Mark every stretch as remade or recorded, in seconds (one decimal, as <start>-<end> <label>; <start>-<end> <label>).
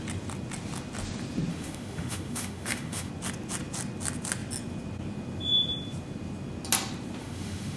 0.0-1.5 recorded; 1.5-3.1 remade; 3.1-7.2 recorded; 7.2-7.8 remade